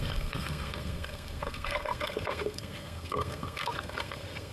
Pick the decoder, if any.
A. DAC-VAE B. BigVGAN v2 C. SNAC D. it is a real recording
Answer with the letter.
C